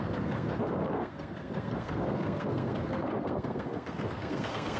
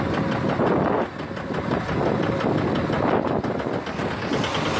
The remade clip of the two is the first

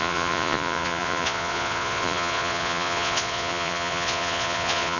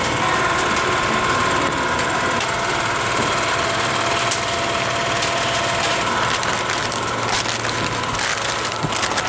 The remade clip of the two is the first